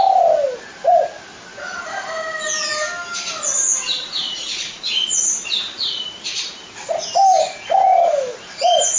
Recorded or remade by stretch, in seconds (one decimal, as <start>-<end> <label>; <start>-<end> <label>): 0.0-3.7 recorded; 3.7-4.9 remade; 4.9-9.0 recorded